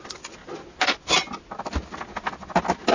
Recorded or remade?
recorded